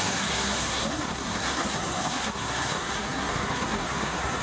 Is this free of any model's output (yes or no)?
no